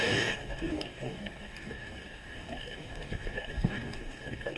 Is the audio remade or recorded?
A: remade